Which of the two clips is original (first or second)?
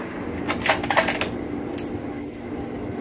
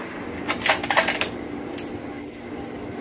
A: first